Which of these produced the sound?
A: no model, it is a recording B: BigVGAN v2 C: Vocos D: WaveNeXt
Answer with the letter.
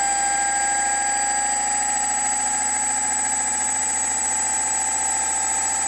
A